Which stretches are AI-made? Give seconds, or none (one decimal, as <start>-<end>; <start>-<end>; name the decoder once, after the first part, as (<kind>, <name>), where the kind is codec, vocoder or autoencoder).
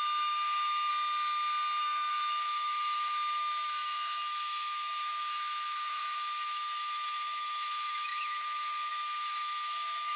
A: 0.0-0.9 (autoencoder, DAC-VAE); 1.8-10.2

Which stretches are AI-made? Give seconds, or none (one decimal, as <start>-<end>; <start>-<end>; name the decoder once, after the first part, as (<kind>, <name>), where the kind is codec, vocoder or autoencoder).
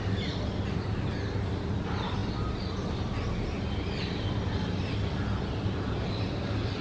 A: none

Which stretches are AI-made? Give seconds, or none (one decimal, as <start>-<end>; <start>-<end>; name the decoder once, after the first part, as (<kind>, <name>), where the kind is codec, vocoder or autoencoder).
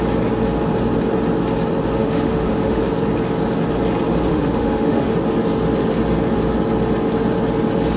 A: 2.0-2.8 (autoencoder, DAC-VAE); 4.3-5.1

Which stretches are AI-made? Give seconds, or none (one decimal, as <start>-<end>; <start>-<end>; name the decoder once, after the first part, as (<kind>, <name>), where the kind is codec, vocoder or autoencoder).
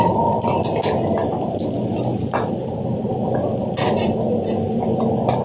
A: none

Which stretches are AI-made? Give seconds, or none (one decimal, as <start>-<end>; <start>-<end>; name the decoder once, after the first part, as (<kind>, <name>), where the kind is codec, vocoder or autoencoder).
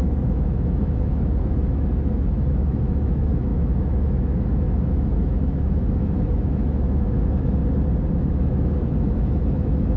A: 0.0-7.6 (autoencoder, DAC-VAE); 8.2-10.0